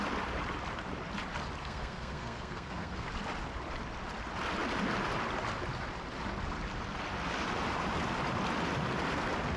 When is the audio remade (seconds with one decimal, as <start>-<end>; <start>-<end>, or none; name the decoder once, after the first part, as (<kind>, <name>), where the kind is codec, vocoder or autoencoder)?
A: 1.6-3.1 (codec, SNAC)